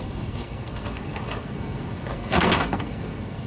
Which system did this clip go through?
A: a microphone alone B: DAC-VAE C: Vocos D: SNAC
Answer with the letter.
D